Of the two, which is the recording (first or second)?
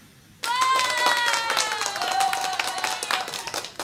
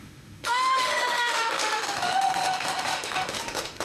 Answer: first